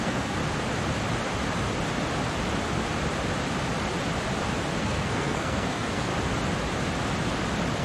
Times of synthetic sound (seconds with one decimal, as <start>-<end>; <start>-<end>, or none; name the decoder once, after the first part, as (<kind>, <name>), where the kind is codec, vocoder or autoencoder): 0.0-0.4 (codec, SNAC); 4.8-6.1